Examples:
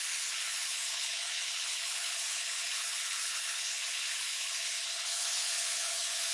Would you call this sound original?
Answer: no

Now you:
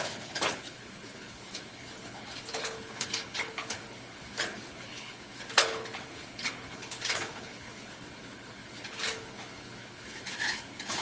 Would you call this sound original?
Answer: no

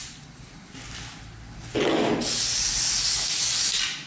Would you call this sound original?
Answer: yes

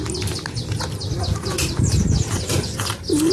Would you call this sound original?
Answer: yes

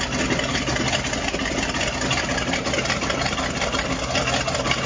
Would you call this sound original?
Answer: yes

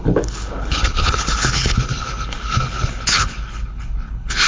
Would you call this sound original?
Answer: no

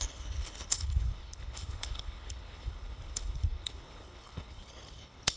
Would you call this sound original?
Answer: no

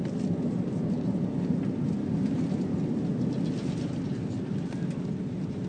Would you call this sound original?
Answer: yes